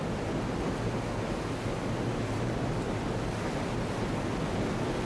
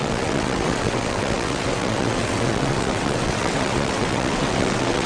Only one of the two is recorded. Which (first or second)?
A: first